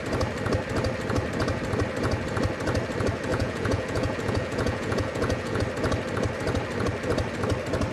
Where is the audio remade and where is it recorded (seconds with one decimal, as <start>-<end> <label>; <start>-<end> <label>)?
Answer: 0.0-3.3 recorded; 3.3-5.6 remade; 5.6-7.9 recorded